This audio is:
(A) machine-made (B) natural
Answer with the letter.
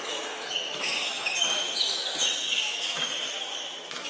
A